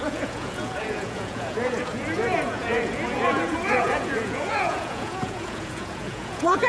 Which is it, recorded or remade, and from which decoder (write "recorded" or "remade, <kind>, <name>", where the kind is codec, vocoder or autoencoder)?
remade, vocoder, Vocos